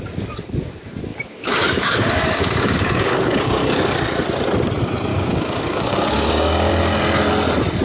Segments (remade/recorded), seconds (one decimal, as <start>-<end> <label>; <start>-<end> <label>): 0.0-1.1 recorded; 1.1-3.8 remade; 3.8-5.1 recorded; 5.1-6.7 remade; 6.7-7.8 recorded